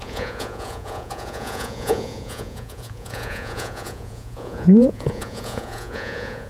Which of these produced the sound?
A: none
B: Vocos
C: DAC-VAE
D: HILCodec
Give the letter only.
B